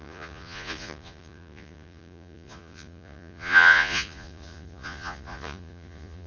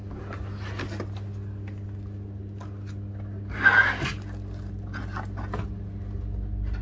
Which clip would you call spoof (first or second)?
first